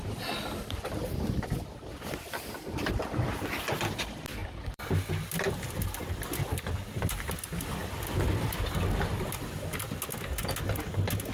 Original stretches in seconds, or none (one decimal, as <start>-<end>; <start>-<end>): 0.0-4.4; 6.6-7.8; 9.3-11.3